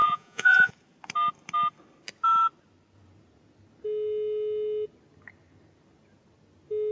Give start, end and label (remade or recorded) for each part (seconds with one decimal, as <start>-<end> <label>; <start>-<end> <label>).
0.0-0.7 remade; 0.7-6.9 recorded